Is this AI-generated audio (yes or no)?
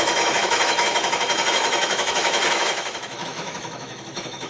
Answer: yes